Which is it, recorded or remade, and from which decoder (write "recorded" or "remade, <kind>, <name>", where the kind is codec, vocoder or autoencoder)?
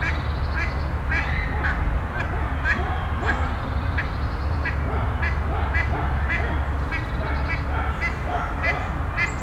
recorded